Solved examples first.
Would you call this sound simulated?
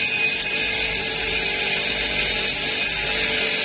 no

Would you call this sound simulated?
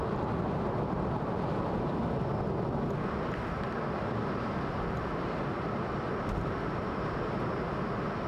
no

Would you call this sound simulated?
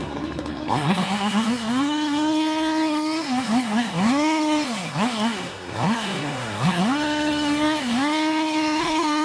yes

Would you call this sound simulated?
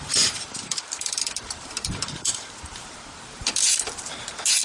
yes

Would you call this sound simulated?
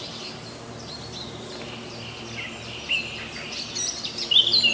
no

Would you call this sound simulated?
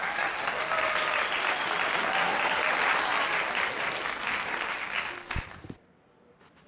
no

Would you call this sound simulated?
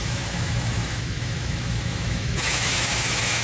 yes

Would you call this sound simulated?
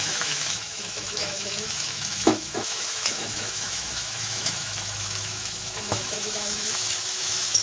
yes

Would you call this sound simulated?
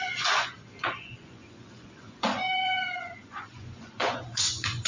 yes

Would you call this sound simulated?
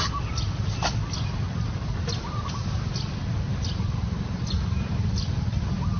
no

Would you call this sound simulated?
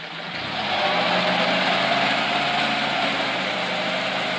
no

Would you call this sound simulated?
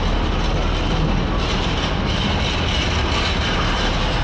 no